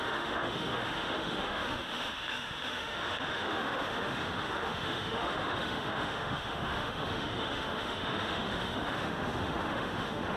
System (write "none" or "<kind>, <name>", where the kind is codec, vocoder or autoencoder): autoencoder, DAC-VAE